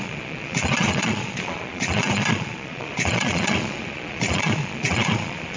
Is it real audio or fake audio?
fake